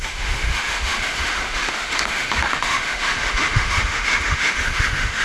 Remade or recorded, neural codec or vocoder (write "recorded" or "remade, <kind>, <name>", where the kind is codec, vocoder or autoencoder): remade, autoencoder, DAC-VAE